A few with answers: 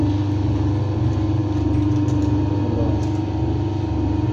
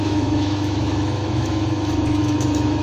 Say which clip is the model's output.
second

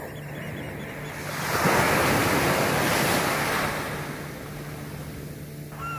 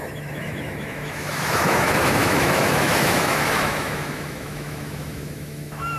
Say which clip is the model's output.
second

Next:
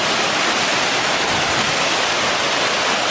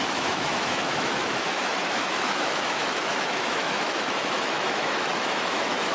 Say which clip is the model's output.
second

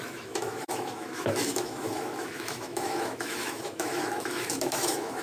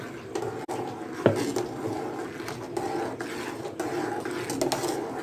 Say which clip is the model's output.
first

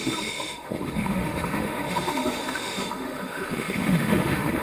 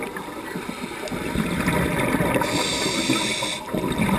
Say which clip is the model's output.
first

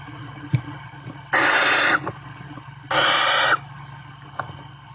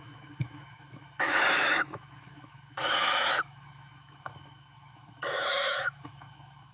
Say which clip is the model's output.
second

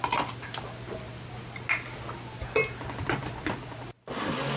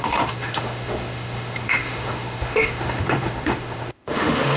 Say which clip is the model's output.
second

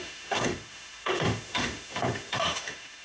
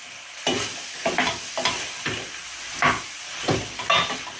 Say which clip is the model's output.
first